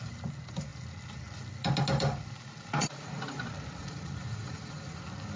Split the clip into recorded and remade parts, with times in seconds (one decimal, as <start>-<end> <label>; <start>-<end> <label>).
0.0-2.8 recorded; 2.8-3.4 remade; 3.4-3.8 recorded; 3.8-5.0 remade; 5.0-5.4 recorded